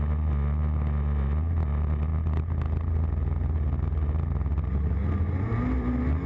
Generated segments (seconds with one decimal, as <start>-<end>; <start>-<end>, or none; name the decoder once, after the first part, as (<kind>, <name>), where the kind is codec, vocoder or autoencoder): none